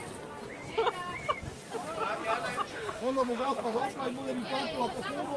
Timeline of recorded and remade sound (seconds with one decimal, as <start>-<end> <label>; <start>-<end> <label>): 0.0-2.7 recorded; 2.7-3.8 remade; 3.8-5.4 recorded